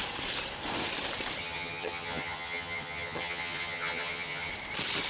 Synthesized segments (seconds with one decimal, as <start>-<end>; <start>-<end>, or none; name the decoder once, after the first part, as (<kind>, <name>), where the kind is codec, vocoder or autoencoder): 1.4-4.5 (vocoder, HiFi-GAN)